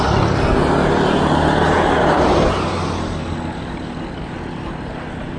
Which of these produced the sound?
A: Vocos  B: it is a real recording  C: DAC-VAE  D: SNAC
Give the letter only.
B